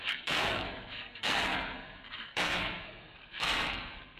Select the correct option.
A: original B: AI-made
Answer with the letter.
B